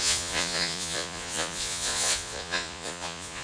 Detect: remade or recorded remade